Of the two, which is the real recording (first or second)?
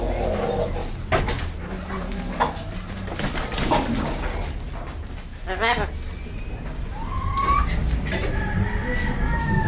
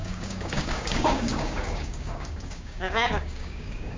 first